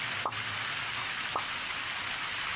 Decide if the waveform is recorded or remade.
recorded